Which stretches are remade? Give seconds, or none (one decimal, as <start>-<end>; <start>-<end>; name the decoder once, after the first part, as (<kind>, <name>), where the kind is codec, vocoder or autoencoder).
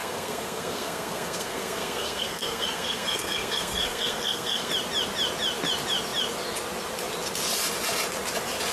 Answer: 0.0-4.7 (codec, SNAC)